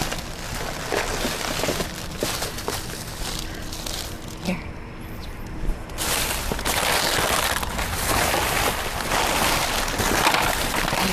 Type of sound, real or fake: real